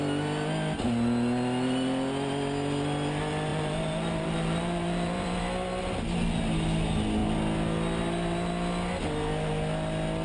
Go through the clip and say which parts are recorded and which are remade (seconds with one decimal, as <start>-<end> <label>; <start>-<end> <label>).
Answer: 0.0-3.5 recorded; 3.5-5.4 remade; 5.4-10.2 recorded